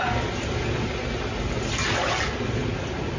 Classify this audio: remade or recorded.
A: recorded